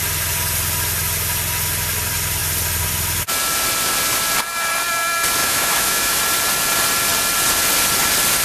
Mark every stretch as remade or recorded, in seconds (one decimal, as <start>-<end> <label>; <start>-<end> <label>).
0.0-5.4 recorded; 5.4-6.2 remade; 6.2-8.4 recorded